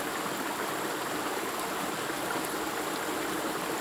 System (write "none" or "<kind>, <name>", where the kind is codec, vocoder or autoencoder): none